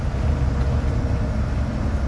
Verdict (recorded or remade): recorded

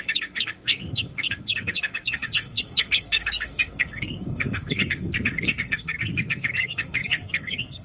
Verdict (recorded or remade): remade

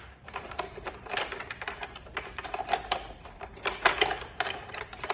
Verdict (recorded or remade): remade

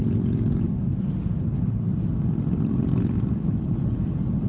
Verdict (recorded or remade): recorded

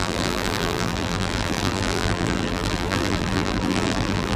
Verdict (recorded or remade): remade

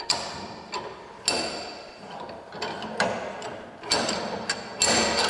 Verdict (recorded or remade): recorded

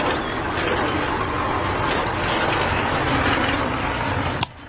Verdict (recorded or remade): recorded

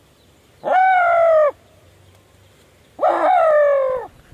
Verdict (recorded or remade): recorded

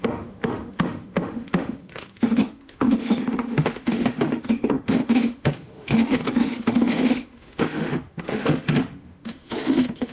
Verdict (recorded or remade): remade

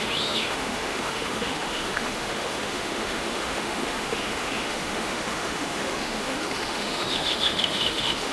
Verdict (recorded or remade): remade